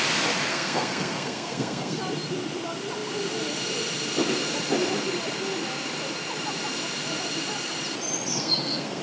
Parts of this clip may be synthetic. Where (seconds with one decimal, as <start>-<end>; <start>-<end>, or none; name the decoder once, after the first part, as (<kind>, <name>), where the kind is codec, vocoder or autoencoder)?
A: 0.5-2.0 (codec, SNAC); 8.3-9.0